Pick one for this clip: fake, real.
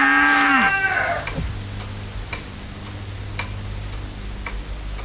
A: real